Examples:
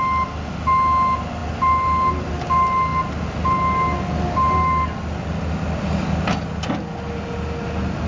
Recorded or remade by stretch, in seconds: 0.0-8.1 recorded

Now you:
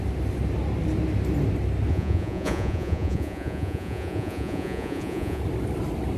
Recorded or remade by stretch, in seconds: 0.0-1.9 recorded; 1.9-5.4 remade; 5.4-6.2 recorded

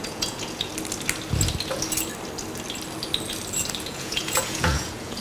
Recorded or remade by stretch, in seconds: 0.0-0.7 remade; 0.7-3.8 recorded; 3.8-5.2 remade

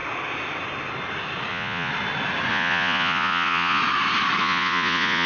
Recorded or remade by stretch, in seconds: 0.0-1.5 recorded; 1.5-1.9 remade; 1.9-2.5 recorded; 2.5-3.8 remade; 3.8-4.4 recorded; 4.4-5.3 remade

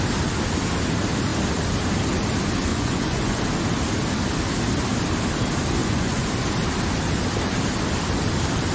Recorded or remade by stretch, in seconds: 0.0-2.7 recorded; 2.7-3.4 remade; 3.4-5.8 recorded; 5.8-6.3 remade; 6.3-8.7 recorded